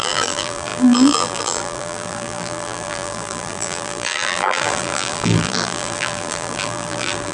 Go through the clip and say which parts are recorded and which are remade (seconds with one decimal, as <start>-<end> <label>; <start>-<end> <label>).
0.0-7.3 remade

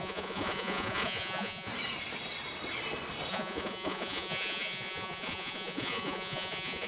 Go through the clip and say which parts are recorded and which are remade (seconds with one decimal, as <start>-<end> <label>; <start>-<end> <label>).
0.0-1.7 remade; 1.7-3.3 recorded; 3.3-6.9 remade

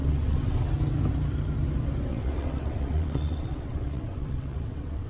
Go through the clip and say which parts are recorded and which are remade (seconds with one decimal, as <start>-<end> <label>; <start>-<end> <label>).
0.0-0.7 remade; 0.7-2.1 recorded; 2.1-5.1 remade

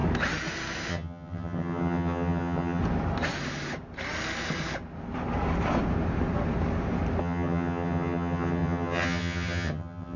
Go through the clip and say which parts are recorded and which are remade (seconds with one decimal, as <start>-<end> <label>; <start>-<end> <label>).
0.0-0.9 recorded; 0.9-2.8 remade; 2.8-7.2 recorded; 7.2-10.2 remade

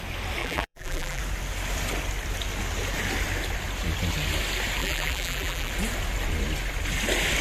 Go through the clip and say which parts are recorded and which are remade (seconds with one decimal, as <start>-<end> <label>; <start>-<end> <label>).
0.0-0.4 recorded; 0.4-1.2 remade; 1.2-4.8 recorded; 4.8-5.7 remade; 5.7-7.4 recorded

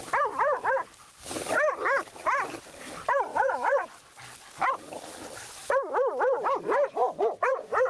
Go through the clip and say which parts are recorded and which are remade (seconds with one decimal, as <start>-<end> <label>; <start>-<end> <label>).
0.0-3.3 recorded; 3.3-4.0 remade; 4.0-7.0 recorded; 7.0-7.9 remade

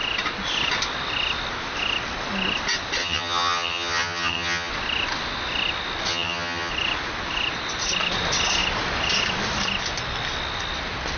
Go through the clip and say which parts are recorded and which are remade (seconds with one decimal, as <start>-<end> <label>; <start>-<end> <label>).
0.0-3.0 recorded; 3.0-4.7 remade; 4.7-6.1 recorded; 6.1-6.7 remade; 6.7-11.2 recorded

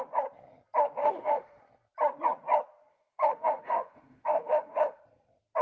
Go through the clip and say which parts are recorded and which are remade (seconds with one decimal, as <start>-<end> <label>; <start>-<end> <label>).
0.0-1.0 recorded; 1.0-1.6 remade; 1.6-2.9 recorded; 2.9-5.0 remade; 5.0-5.6 recorded